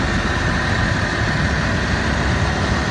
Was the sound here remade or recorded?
recorded